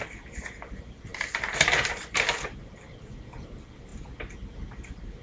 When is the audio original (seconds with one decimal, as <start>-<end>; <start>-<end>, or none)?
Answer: 0.0-5.2